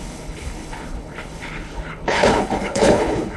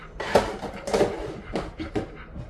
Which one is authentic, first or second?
second